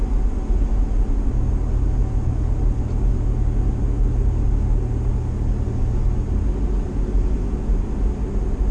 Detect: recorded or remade recorded